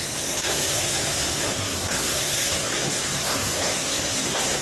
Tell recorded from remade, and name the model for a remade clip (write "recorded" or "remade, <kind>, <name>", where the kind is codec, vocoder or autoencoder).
remade, codec, SNAC